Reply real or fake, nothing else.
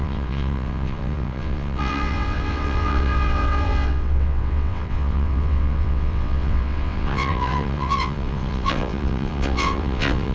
fake